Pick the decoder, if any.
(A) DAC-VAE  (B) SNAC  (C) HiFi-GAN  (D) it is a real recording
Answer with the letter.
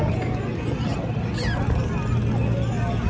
D